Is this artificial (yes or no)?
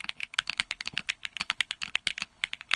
yes